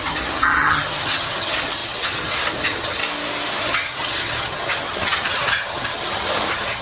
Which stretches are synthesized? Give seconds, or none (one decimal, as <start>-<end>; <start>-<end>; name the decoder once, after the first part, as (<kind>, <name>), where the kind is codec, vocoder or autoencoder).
0.0-3.0 (vocoder, HiFi-GAN); 3.6-6.8